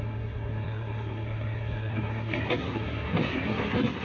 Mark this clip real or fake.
fake